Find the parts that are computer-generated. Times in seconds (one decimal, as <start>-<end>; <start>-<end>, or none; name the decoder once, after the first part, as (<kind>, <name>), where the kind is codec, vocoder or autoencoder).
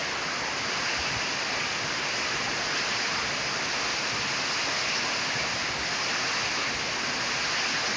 none